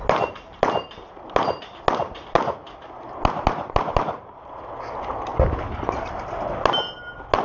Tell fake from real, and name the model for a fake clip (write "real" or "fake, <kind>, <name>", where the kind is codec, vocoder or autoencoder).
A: real